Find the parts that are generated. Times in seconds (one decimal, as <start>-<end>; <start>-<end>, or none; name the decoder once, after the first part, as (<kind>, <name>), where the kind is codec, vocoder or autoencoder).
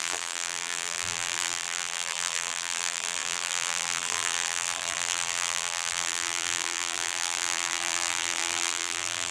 0.0-9.3 (vocoder, BigVGAN v2)